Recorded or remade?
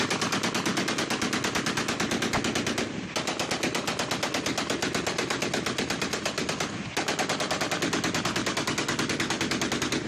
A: recorded